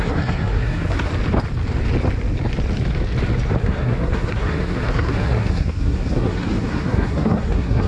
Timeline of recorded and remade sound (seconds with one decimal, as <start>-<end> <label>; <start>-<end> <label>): 0.0-1.1 remade; 1.1-3.6 recorded; 3.6-7.9 remade